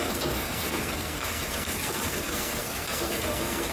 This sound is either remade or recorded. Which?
remade